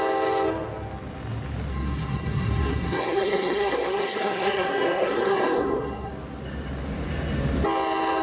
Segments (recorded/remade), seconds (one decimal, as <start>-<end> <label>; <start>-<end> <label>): 0.0-1.7 recorded; 1.7-6.1 remade; 6.1-8.2 recorded

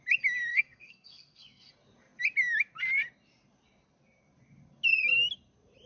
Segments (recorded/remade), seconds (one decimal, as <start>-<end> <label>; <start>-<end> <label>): 0.0-0.5 recorded; 0.5-1.7 remade; 1.7-5.9 recorded